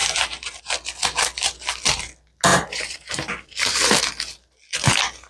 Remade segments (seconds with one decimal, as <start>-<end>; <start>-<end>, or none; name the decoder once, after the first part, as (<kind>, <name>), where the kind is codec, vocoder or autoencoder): 0.0-0.6 (vocoder, BigVGAN v2); 2.5-4.0